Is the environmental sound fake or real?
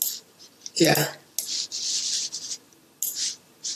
real